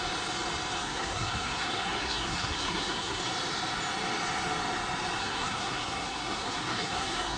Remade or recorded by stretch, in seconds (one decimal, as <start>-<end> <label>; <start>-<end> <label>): 0.0-0.8 recorded; 0.8-3.2 remade; 3.2-5.2 recorded; 5.2-7.4 remade